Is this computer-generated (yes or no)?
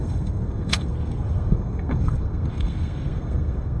yes